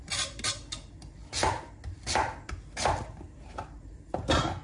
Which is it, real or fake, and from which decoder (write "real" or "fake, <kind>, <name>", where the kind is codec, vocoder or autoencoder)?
real